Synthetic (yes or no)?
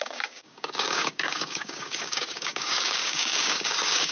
yes